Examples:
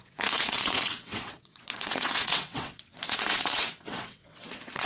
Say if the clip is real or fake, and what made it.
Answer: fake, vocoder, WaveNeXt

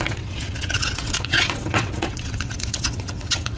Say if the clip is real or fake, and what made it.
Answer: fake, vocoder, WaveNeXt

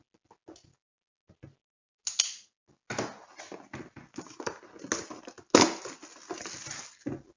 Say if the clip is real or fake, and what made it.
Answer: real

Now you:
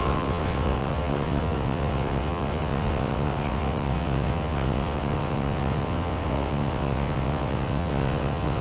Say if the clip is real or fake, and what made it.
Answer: fake, vocoder, WaveNeXt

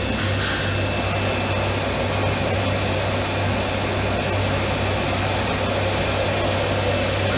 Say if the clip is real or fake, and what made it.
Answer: real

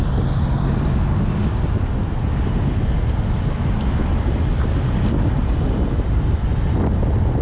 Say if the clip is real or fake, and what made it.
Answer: real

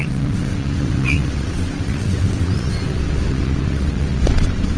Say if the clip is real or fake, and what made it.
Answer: fake, vocoder, WaveNeXt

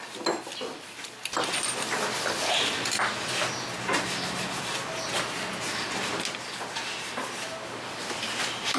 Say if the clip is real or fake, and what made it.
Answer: real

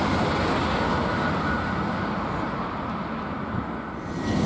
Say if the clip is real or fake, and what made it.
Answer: real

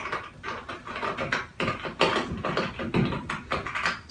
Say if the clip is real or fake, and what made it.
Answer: real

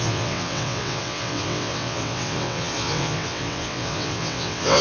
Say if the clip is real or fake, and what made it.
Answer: fake, vocoder, WaveNeXt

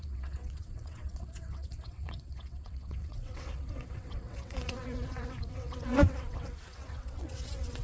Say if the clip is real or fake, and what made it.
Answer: fake, vocoder, WaveNeXt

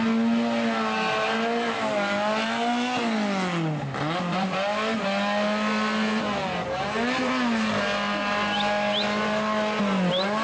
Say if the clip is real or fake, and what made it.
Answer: real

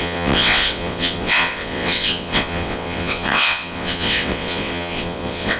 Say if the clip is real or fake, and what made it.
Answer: fake, vocoder, WaveNeXt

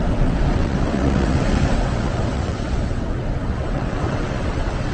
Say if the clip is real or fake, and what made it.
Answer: fake, vocoder, WaveNeXt